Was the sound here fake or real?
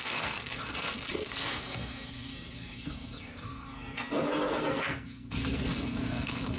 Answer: fake